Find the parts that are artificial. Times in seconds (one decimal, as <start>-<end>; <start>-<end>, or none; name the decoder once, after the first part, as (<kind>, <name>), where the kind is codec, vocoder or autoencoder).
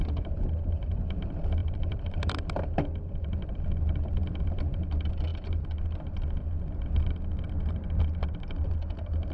1.6-2.8 (vocoder, BigVGAN v2)